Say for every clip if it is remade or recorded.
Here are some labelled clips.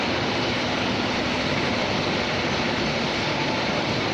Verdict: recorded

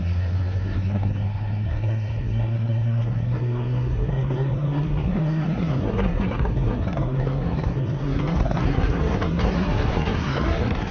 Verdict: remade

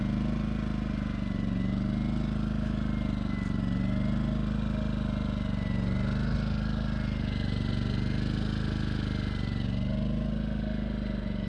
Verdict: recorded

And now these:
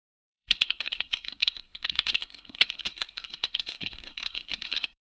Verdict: remade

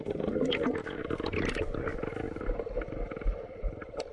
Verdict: recorded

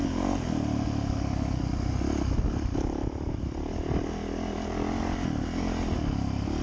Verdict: recorded